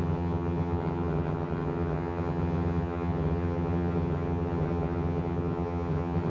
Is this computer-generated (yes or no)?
yes